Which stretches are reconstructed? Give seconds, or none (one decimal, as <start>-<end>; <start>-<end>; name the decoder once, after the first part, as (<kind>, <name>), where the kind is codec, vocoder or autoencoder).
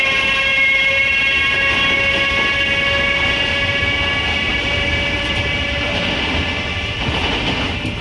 0.5-1.8 (vocoder, BigVGAN v2); 4.5-6.2